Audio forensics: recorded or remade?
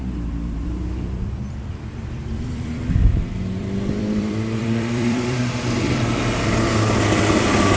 remade